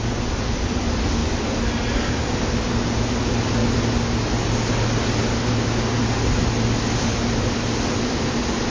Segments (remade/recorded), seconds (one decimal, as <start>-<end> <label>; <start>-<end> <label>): 0.0-8.7 recorded